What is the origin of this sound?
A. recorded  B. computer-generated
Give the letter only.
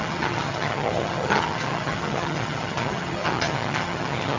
B